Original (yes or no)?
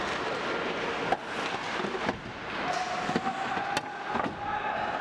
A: yes